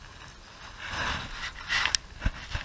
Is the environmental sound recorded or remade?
recorded